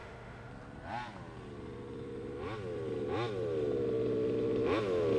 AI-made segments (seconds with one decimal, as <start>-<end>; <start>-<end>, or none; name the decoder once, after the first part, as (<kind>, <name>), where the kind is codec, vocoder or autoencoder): 0.0-0.5 (autoencoder, DAC-VAE)